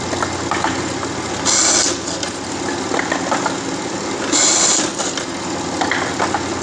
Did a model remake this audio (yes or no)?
no